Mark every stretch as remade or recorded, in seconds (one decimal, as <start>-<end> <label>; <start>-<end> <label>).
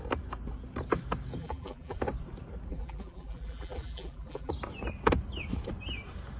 0.0-1.4 recorded; 1.4-2.0 remade; 2.0-2.7 recorded; 2.7-4.5 remade; 4.5-6.4 recorded